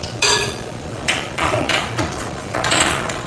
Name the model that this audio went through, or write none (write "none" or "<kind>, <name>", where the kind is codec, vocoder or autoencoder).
vocoder, Vocos